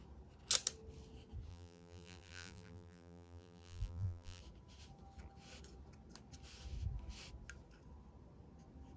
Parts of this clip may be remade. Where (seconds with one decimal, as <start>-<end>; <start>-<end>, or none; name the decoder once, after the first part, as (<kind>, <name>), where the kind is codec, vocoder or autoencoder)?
1.5-4.4 (vocoder, BigVGAN v2)